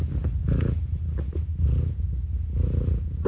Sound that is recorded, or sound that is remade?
recorded